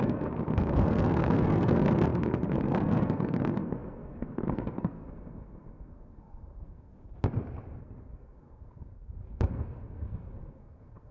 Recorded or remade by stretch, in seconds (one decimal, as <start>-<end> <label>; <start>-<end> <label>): 0.0-6.9 remade; 6.9-7.8 recorded; 7.8-11.1 remade